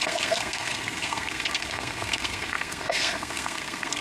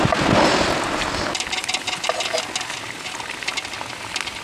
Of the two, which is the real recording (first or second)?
second